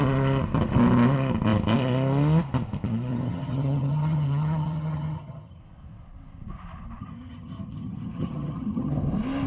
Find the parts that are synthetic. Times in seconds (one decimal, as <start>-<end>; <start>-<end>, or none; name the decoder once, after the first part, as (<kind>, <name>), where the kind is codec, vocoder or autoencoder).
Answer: 3.1-5.6 (vocoder, HiFi-GAN); 7.0-8.9